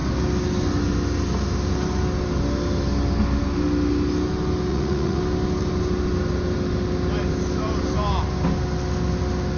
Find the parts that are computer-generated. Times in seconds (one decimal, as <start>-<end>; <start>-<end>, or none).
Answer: 4.7-5.2